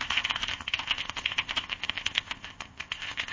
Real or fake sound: fake